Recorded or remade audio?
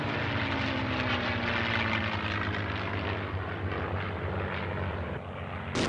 recorded